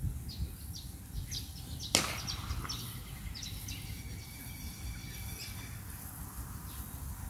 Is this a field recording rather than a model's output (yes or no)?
yes